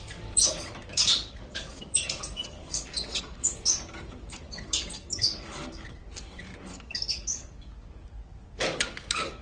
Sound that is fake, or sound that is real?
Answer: fake